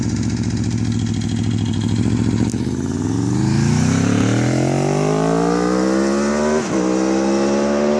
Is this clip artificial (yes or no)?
no